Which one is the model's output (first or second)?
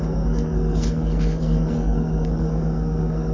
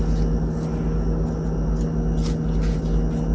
first